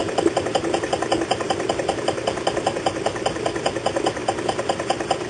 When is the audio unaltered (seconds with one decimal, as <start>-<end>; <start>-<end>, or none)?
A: 0.0-5.3

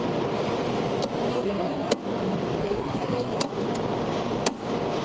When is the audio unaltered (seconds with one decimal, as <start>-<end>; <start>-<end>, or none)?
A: 0.0-1.3; 1.9-2.6; 3.4-5.0

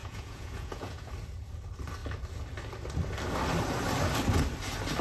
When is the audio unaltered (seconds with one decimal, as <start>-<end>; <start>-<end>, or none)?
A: 1.1-5.0

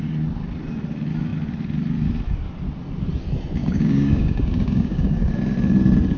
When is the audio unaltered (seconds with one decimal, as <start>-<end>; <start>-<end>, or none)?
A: 0.0-3.6; 5.3-6.2

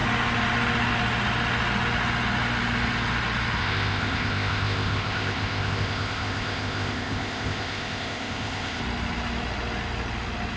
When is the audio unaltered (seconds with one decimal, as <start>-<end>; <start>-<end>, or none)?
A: 0.0-3.6; 8.8-10.6

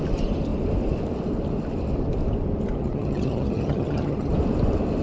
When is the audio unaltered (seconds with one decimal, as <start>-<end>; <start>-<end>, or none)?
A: 0.0-2.8; 4.3-5.0